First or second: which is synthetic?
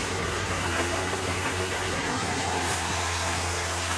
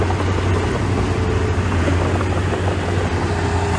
first